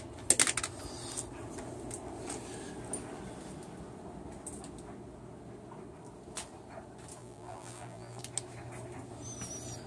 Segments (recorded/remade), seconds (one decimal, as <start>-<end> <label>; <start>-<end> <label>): 0.0-7.2 recorded; 7.2-8.2 remade; 8.2-9.9 recorded